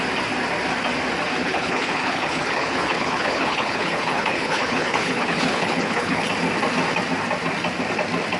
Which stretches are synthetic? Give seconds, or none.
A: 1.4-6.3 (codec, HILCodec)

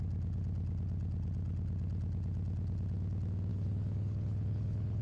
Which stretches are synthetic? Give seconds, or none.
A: 3.5-5.0 (codec, HILCodec)

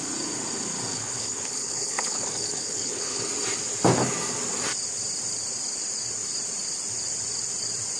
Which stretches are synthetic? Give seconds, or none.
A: 0.9-3.3 (codec, HILCodec)

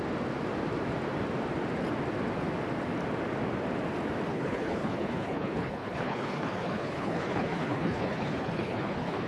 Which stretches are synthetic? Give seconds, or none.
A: 4.3-9.3 (codec, HILCodec)

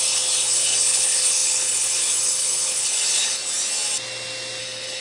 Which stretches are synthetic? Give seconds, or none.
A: 0.0-3.4 (codec, HILCodec); 4.6-5.0